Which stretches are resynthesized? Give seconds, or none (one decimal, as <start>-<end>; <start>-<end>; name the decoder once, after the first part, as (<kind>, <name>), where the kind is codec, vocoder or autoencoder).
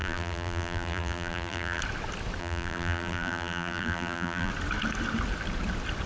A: 0.0-1.8 (vocoder, BigVGAN v2); 2.4-4.5